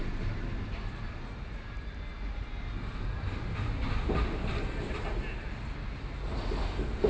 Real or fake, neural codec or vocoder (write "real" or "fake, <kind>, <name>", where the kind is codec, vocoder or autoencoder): real